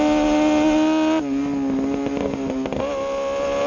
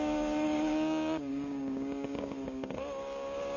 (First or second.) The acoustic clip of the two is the first